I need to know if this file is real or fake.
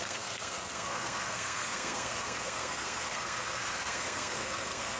fake